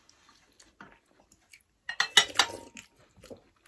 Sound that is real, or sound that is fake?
real